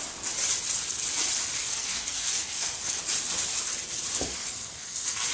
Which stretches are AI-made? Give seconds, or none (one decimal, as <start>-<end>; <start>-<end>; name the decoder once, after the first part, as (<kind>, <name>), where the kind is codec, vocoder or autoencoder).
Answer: 1.6-3.0 (codec, SNAC); 4.3-5.3

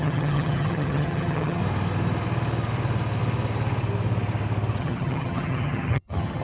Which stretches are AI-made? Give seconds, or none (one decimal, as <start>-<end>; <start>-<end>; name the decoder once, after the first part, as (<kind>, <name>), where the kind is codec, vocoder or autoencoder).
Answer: 0.0-1.6 (vocoder, HiFi-GAN); 4.8-6.4

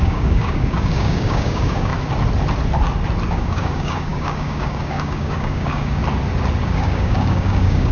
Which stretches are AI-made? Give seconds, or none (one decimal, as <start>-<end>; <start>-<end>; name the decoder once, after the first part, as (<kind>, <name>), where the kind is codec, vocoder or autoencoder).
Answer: 0.0-1.9 (codec, DAC); 3.3-6.0; 6.6-7.9

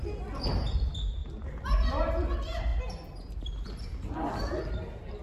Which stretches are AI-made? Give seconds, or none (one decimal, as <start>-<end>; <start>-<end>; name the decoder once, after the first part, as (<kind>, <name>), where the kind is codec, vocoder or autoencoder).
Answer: none